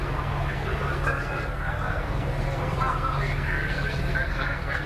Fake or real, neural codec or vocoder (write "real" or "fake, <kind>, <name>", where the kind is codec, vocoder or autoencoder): fake, codec, SNAC